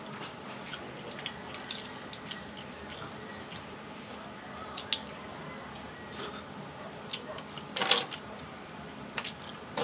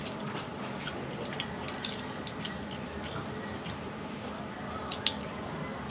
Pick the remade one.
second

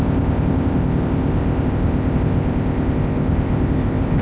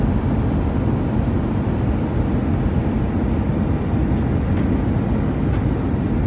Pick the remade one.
first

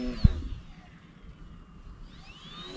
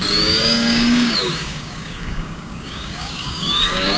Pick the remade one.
second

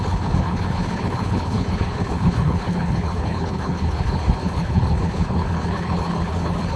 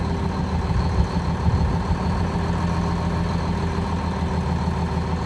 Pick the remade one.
first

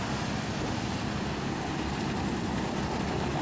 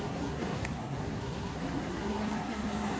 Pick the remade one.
second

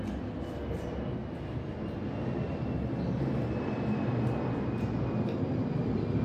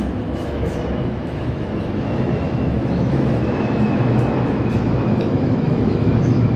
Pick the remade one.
second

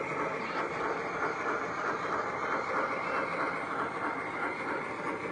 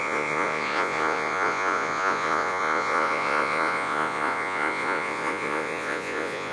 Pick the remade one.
second